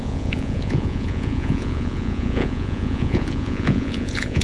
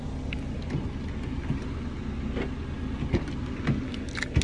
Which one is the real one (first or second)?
second